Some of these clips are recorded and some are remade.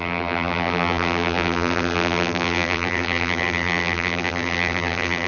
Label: remade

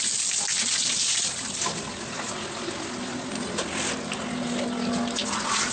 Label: recorded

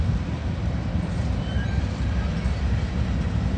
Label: recorded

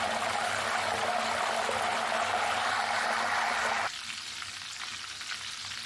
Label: recorded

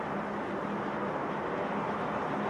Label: recorded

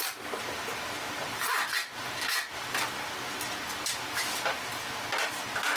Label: remade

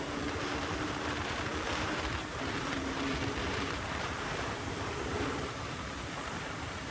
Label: remade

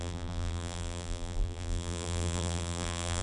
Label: remade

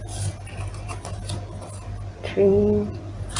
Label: remade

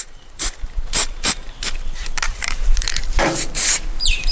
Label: remade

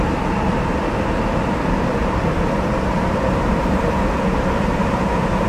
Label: remade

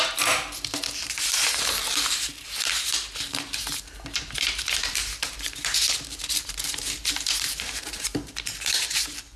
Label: remade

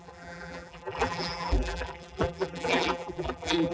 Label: remade